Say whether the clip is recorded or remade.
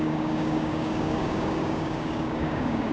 remade